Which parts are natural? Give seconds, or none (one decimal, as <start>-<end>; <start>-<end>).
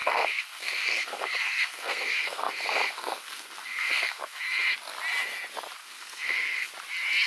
4.4-5.8; 6.7-7.3